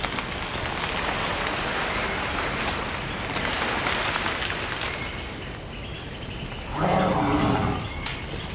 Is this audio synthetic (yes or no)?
no